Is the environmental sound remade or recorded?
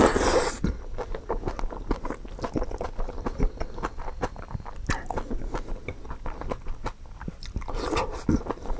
recorded